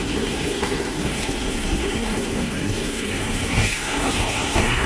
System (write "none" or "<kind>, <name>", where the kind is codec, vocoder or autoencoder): codec, SNAC